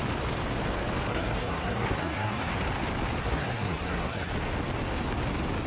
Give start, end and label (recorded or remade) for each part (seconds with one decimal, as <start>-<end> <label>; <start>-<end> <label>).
0.0-1.1 recorded; 1.1-2.5 remade; 2.5-3.2 recorded; 3.2-4.3 remade; 4.3-5.7 recorded